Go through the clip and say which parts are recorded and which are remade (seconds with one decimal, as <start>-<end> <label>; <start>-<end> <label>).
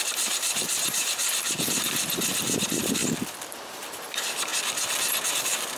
0.0-1.2 remade; 1.2-2.4 recorded; 2.4-3.0 remade; 3.0-3.5 recorded; 3.5-4.5 remade; 4.5-5.3 recorded; 5.3-5.8 remade